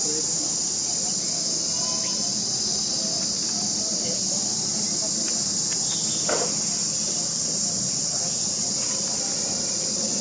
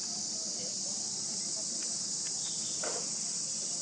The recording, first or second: first